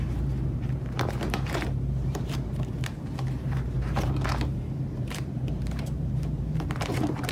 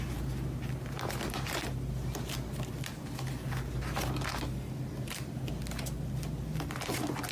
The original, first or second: second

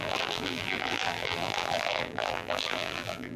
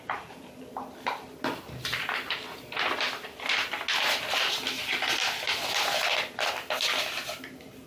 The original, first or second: second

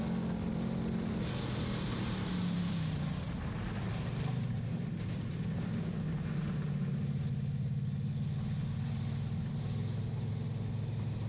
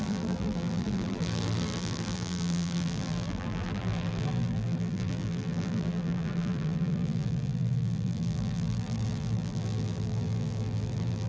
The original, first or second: first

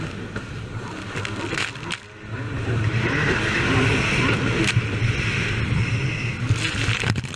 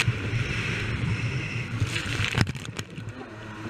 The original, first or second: first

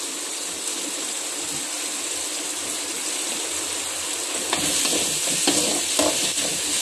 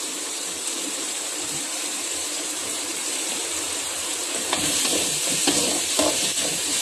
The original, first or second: first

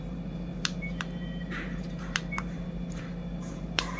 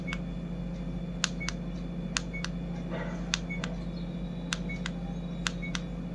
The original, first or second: second